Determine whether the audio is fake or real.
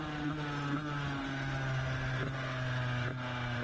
real